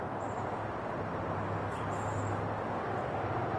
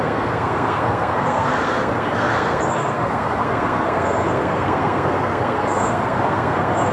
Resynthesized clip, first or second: second